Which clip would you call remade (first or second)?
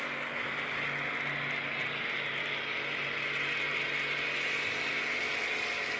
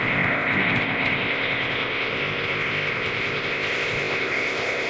second